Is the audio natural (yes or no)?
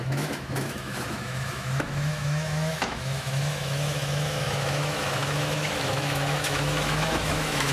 no